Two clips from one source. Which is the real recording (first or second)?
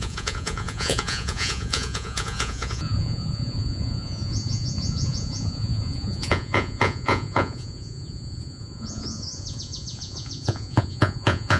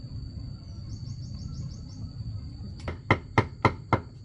second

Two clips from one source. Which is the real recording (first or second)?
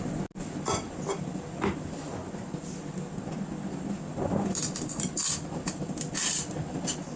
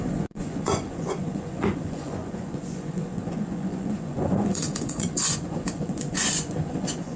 first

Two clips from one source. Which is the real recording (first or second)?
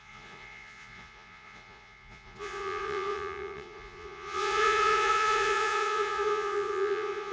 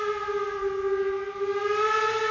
second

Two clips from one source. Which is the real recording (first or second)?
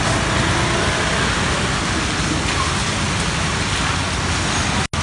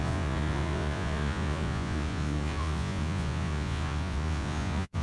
first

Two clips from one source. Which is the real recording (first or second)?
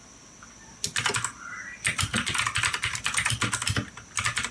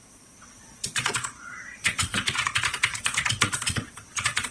first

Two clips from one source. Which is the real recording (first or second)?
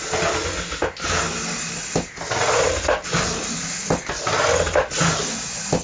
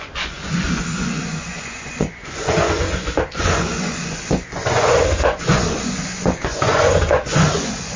first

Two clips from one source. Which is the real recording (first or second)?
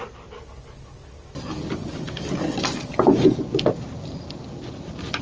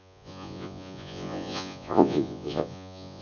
first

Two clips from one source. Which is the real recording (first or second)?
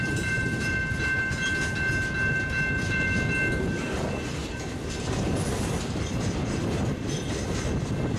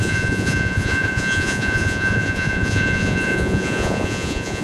first